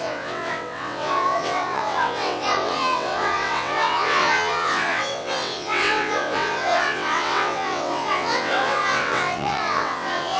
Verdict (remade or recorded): remade